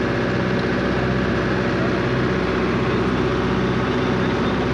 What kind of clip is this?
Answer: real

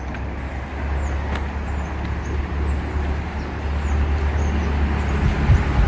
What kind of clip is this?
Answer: real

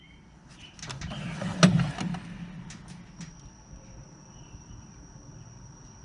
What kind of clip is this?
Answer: real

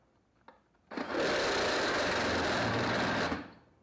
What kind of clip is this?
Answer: real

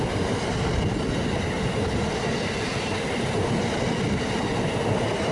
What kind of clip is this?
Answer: real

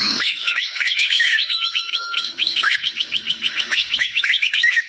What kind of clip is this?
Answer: fake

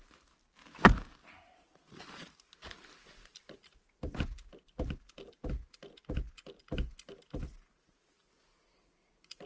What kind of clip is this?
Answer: real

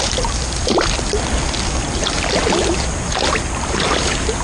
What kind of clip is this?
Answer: real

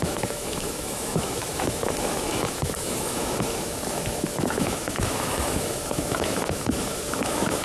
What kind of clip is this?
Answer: fake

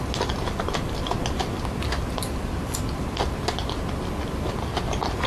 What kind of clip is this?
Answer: real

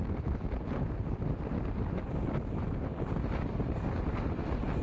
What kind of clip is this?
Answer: real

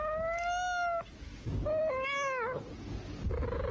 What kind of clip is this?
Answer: real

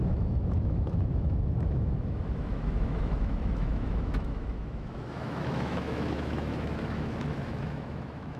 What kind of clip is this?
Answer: fake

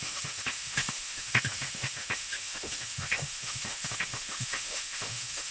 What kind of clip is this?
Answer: fake